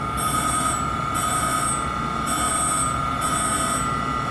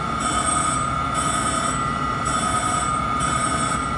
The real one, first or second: first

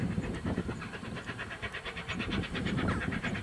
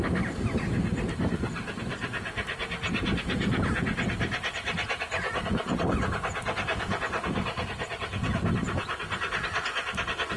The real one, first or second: second